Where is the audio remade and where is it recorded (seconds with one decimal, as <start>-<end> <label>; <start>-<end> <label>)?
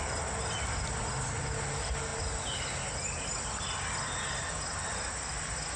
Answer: 0.0-5.8 recorded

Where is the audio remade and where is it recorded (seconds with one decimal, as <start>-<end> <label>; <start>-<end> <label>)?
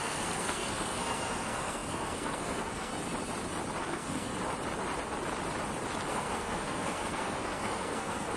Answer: 0.0-2.9 remade; 2.9-3.8 recorded; 3.8-4.3 remade; 4.3-6.1 recorded; 6.1-8.4 remade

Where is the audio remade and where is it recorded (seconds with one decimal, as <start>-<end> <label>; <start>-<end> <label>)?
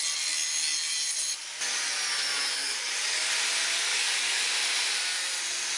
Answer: 0.0-2.5 recorded; 2.5-3.3 remade; 3.3-3.9 recorded; 3.9-4.4 remade; 4.4-5.8 recorded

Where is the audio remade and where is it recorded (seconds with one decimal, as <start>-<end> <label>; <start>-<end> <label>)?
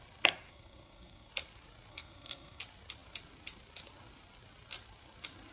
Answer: 0.0-0.5 recorded; 0.5-1.3 remade; 1.3-1.9 recorded; 1.9-2.6 remade; 2.6-5.5 recorded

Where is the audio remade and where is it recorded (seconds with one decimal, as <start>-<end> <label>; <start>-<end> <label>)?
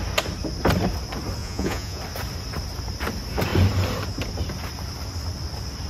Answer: 0.0-1.4 recorded; 1.4-2.0 remade; 2.0-5.9 recorded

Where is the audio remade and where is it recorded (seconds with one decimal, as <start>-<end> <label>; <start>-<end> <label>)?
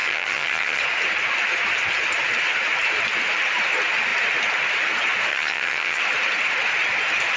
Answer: 0.0-0.8 remade; 0.8-5.3 recorded; 5.3-6.0 remade; 6.0-7.4 recorded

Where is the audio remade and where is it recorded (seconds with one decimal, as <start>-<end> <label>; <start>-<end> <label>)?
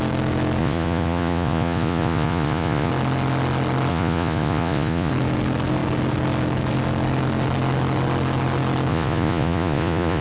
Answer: 0.0-0.6 recorded; 0.6-2.9 remade; 2.9-3.9 recorded; 3.9-5.1 remade; 5.1-8.9 recorded; 8.9-10.2 remade